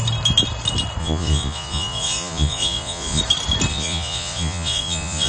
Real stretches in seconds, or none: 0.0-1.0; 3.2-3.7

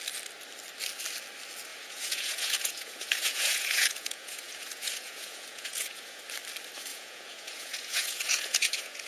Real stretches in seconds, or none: 0.0-1.7; 6.2-6.9

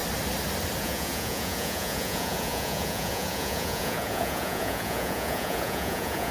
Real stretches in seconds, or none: 0.0-0.8

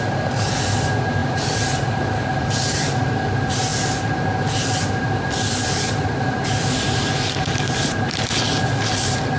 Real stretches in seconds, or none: 0.0-9.4

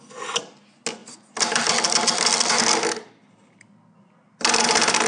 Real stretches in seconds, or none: 0.0-5.1

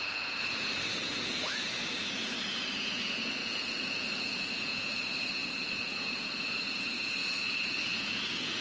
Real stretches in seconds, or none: none